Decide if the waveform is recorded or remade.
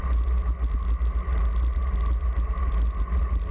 recorded